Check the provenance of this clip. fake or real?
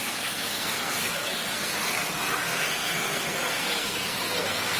fake